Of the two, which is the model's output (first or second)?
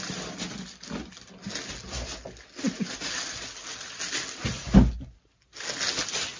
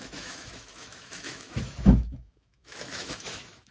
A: second